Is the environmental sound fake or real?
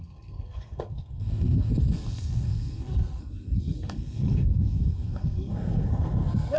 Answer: fake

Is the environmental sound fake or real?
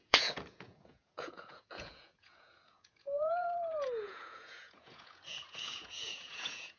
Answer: fake